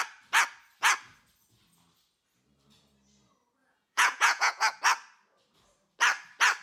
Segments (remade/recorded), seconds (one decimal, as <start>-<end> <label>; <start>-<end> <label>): 0.0-3.6 recorded; 3.6-4.8 remade; 4.8-6.6 recorded